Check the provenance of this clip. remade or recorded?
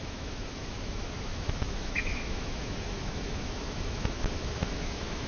remade